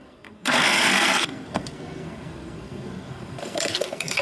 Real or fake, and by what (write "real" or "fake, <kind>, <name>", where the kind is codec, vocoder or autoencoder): fake, codec, SNAC